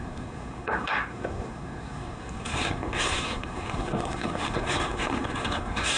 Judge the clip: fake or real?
fake